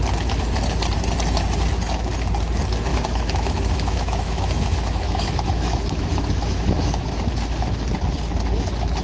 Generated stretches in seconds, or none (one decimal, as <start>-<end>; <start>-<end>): 2.9-7.3